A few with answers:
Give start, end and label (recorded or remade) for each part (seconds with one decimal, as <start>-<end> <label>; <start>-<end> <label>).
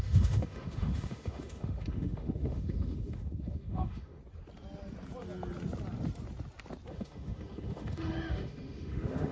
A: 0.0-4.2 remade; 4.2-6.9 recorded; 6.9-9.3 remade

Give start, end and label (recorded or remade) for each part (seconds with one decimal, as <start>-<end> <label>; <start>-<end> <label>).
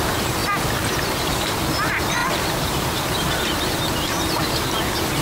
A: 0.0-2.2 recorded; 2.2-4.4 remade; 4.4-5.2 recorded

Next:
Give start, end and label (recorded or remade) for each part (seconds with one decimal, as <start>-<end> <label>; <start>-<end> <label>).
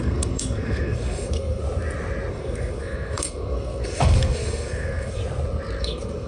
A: 0.0-1.6 remade; 1.6-2.3 recorded; 2.3-5.2 remade; 5.2-5.8 recorded; 5.8-6.3 remade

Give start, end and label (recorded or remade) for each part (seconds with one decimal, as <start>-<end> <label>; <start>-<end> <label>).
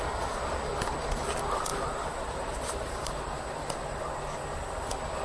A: 0.0-1.7 recorded; 1.7-4.8 remade; 4.8-5.2 recorded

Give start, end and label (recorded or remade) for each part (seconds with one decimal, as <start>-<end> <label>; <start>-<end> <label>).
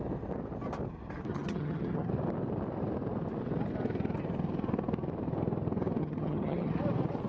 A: 0.0-1.3 recorded; 1.3-2.1 remade; 2.1-6.0 recorded; 6.0-6.7 remade; 6.7-7.3 recorded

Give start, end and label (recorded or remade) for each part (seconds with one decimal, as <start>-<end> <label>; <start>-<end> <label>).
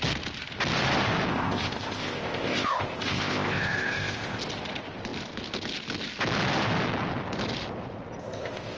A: 0.0-1.3 recorded; 1.3-4.4 remade; 4.4-8.2 recorded; 8.2-8.8 remade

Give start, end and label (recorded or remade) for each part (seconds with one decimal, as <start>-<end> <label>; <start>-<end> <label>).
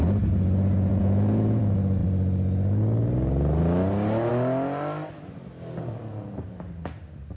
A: 0.0-0.9 recorded; 0.9-1.6 remade; 1.6-7.4 recorded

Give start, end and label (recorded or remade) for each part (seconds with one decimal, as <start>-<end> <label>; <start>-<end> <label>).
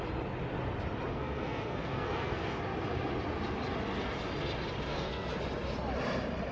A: 0.0-1.1 recorded; 1.1-2.6 remade; 2.6-4.9 recorded; 4.9-5.4 remade; 5.4-6.5 recorded